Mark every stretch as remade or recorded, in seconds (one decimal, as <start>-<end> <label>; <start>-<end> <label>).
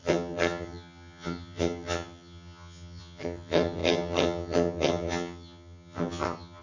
0.0-6.6 remade